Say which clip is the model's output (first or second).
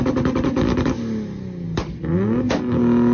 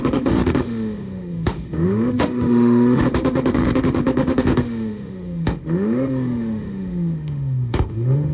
second